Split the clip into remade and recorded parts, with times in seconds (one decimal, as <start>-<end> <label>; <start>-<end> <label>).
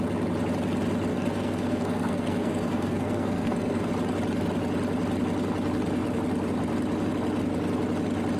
0.0-1.1 recorded; 1.1-3.9 remade; 3.9-8.4 recorded